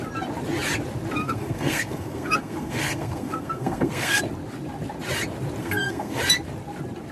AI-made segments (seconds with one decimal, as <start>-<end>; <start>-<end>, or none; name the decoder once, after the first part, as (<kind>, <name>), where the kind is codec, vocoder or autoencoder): 1.2-4.2 (codec, SNAC); 5.6-6.2